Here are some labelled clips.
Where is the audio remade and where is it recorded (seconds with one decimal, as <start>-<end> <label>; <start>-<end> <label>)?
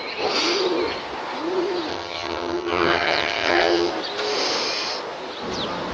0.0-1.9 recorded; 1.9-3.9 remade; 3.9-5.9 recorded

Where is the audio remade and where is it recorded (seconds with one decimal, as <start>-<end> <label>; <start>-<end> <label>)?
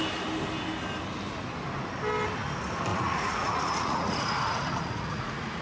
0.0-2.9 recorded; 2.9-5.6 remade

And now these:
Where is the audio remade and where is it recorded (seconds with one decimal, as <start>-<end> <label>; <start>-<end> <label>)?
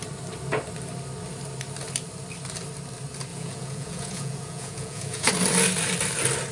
0.0-3.3 recorded; 3.3-5.3 remade; 5.3-6.5 recorded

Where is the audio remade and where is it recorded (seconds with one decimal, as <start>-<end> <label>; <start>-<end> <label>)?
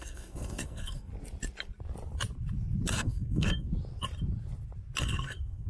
0.0-1.1 remade; 1.1-2.9 recorded; 2.9-3.7 remade; 3.7-5.0 recorded; 5.0-5.7 remade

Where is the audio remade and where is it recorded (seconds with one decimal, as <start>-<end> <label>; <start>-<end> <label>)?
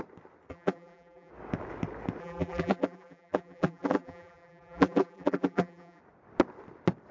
0.0-0.5 recorded; 0.5-1.3 remade; 1.3-2.2 recorded; 2.2-6.0 remade; 6.0-7.1 recorded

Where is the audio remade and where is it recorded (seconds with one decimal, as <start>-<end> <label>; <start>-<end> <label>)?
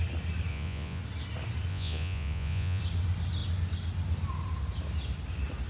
0.0-0.5 recorded; 0.5-1.0 remade; 1.0-1.7 recorded; 1.7-2.8 remade; 2.8-5.7 recorded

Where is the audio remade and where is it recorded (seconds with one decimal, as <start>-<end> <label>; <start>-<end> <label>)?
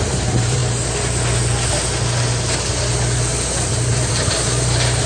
0.0-0.6 remade; 0.6-3.7 recorded; 3.7-5.1 remade